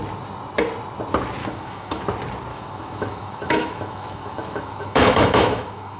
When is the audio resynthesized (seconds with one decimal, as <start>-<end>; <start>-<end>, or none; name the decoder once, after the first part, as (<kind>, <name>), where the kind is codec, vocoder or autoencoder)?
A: 1.4-2.0 (autoencoder, DAC-VAE); 2.5-6.0